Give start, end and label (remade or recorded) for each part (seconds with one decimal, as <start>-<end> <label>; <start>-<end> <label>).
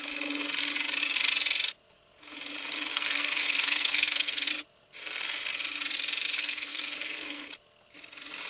0.0-2.9 recorded; 2.9-4.5 remade; 4.5-6.4 recorded; 6.4-7.5 remade; 7.5-8.5 recorded